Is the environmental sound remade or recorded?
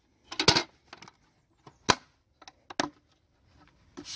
recorded